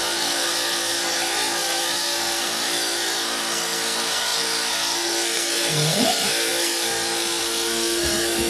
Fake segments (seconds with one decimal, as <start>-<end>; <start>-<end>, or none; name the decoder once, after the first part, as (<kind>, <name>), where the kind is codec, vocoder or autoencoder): 0.0-8.5 (codec, SNAC)